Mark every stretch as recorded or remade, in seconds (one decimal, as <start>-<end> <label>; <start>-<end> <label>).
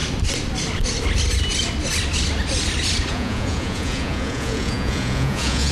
0.0-3.1 recorded; 3.1-5.7 remade